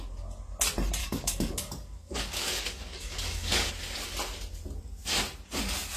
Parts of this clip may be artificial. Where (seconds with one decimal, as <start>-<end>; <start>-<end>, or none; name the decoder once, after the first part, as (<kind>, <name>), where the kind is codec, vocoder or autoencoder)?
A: 1.0-3.7 (codec, DAC)